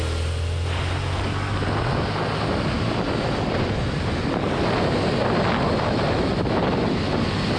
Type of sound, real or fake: real